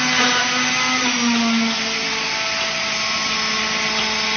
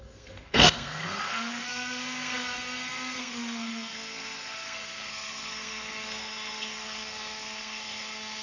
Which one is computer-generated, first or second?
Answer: second